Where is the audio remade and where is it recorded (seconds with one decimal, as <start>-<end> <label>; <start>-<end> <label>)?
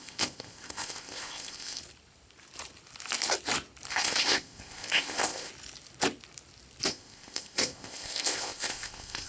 0.0-1.8 remade; 1.8-3.9 recorded; 3.9-5.5 remade; 5.5-6.9 recorded; 6.9-9.3 remade